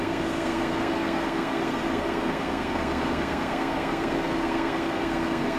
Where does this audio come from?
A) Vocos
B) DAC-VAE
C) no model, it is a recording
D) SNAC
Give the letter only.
D